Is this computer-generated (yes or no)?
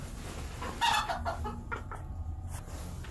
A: no